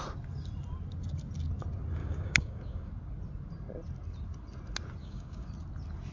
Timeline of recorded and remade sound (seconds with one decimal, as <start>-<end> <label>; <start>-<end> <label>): 0.0-2.0 recorded; 2.0-2.9 remade; 2.9-5.0 recorded; 5.0-5.5 remade; 5.5-6.1 recorded